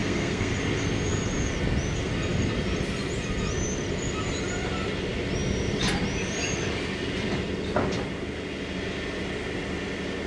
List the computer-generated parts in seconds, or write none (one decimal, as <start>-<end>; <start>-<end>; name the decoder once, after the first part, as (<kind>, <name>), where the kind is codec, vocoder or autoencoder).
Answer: 0.0-0.5 (codec, SNAC)